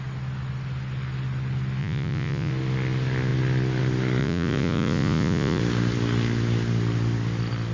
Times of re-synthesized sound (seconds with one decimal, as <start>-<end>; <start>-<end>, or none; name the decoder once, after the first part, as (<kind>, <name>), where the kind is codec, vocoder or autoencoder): 1.8-2.5 (vocoder, Vocos); 4.2-5.6